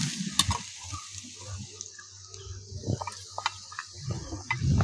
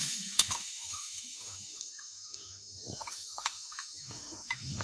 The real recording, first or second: first